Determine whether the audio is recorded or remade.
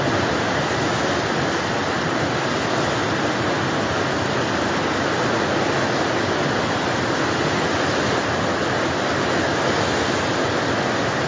recorded